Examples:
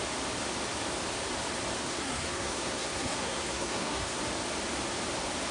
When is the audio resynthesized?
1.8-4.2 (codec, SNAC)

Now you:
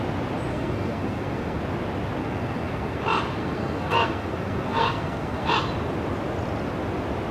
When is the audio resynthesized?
0.5-1.6 (codec, SNAC); 2.2-3.0; 3.4-5.5

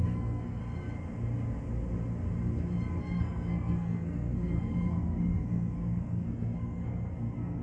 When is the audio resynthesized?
0.0-0.6 (codec, SNAC); 3.0-7.6

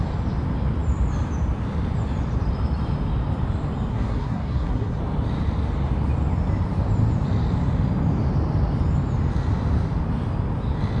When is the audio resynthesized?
3.9-5.0 (codec, SNAC)

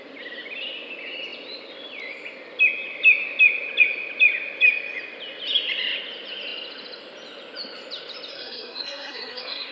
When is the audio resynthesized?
8.3-9.7 (codec, SNAC)

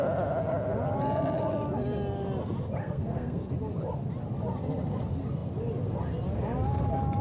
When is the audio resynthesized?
2.8-3.5 (codec, SNAC)

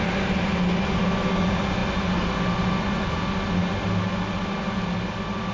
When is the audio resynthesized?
none